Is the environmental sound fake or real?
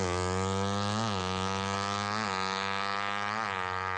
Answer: real